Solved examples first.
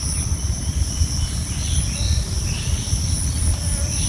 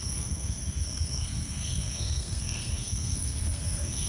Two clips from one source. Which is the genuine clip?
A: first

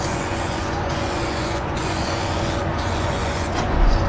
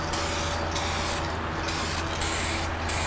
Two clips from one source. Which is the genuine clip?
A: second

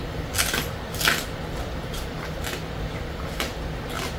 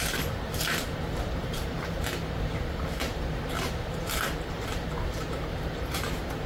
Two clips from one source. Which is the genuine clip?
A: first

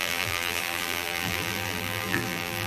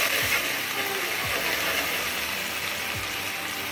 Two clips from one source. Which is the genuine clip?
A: second